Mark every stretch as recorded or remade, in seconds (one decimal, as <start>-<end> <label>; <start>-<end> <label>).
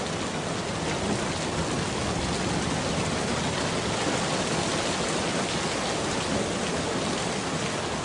0.0-8.0 recorded